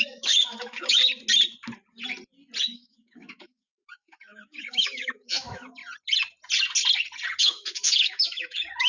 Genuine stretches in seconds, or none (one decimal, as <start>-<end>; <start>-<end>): 1.0-2.6; 5.8-7.4